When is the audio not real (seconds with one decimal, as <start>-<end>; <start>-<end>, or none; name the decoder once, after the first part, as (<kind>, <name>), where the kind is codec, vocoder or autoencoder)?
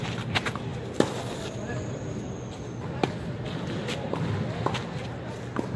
none